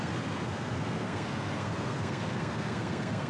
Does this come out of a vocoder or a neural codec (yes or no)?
yes